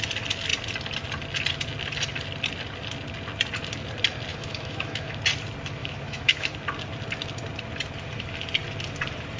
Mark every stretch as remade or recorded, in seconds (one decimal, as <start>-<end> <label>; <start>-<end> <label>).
0.0-4.3 recorded; 4.3-5.2 remade; 5.2-5.8 recorded; 5.8-6.5 remade; 6.5-9.4 recorded